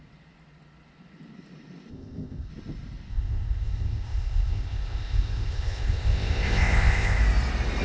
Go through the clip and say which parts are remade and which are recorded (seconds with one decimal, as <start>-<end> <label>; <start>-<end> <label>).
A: 0.0-1.9 recorded; 1.9-2.5 remade; 2.5-3.1 recorded; 3.1-7.2 remade; 7.2-7.8 recorded